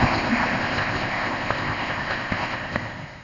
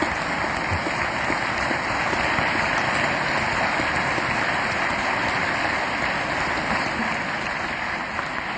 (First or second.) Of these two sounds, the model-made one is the first